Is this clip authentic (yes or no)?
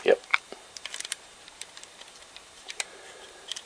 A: no